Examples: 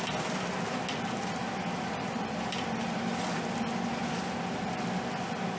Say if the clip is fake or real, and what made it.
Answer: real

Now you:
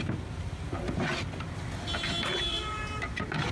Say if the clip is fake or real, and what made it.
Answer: real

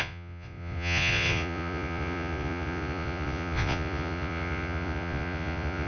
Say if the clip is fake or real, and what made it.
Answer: fake, vocoder, Vocos